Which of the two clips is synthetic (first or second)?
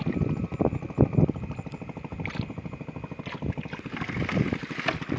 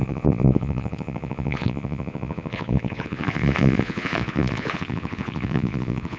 second